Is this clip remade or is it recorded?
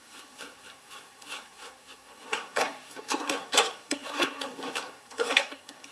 remade